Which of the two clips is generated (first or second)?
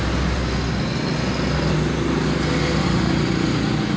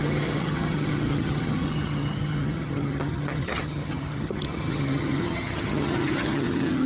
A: second